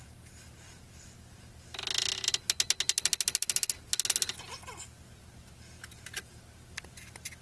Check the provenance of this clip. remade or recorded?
recorded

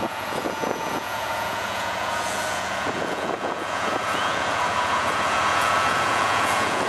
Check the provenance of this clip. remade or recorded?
remade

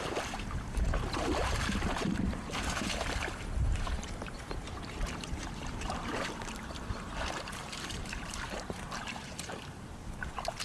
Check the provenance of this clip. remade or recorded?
remade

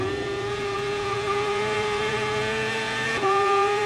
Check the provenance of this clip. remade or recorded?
remade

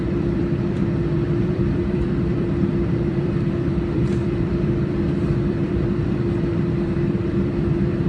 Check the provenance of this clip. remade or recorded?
remade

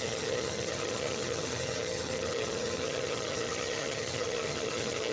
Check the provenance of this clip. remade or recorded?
remade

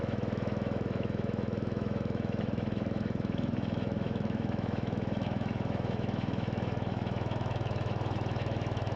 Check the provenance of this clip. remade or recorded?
remade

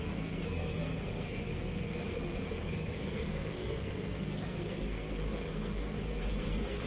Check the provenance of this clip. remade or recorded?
remade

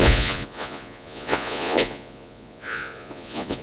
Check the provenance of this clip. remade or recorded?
remade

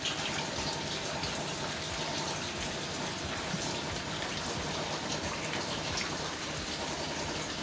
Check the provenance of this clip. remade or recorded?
recorded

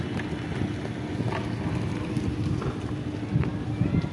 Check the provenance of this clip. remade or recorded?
recorded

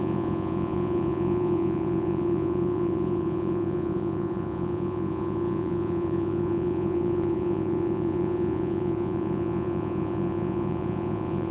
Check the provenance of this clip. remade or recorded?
remade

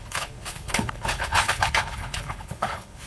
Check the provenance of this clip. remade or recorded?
remade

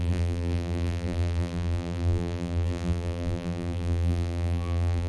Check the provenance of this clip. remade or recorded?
remade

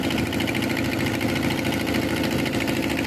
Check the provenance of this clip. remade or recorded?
recorded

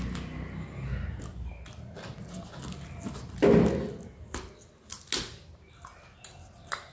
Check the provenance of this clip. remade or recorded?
recorded